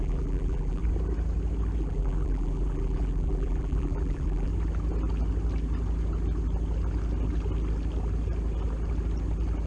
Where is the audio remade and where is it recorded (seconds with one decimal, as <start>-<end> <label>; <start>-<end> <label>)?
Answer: 0.0-0.8 remade; 0.8-1.8 recorded; 1.8-4.5 remade; 4.5-9.7 recorded